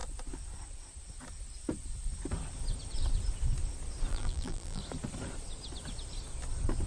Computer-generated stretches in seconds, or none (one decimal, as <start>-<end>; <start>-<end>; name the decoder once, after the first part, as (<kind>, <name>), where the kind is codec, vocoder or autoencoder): 4.1-4.8 (vocoder, BigVGAN v2)